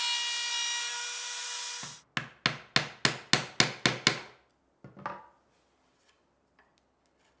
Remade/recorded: recorded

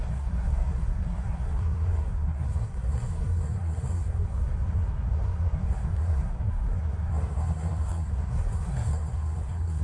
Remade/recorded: remade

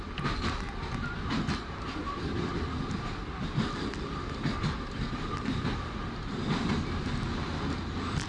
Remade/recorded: recorded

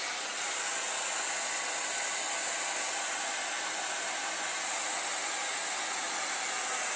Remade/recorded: recorded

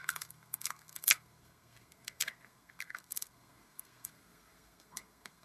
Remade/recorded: remade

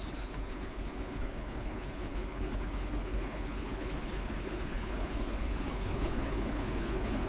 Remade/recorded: remade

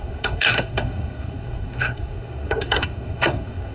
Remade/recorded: remade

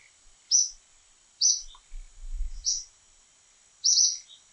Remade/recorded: recorded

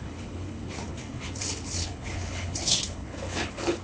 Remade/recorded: remade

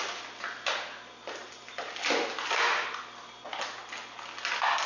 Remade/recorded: recorded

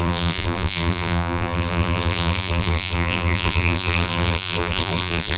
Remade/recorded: remade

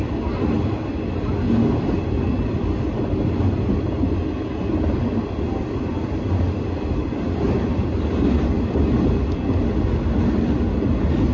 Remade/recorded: recorded